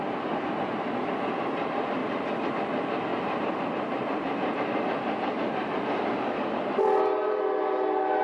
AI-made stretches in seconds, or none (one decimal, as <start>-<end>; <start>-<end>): 2.0-2.5; 3.1-4.7